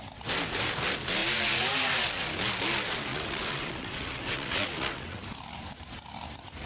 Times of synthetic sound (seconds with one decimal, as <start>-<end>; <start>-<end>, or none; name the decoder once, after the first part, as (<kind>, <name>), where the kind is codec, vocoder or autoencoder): 3.1-5.2 (vocoder, WaveNeXt)